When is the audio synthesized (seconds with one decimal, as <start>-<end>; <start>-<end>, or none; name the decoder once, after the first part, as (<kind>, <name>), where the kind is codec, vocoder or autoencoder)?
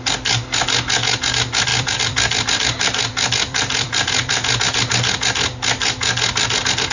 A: 1.7-4.6 (vocoder, BigVGAN v2)